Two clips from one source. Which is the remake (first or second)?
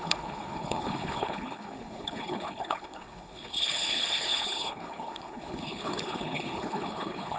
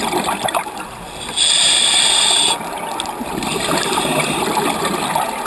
first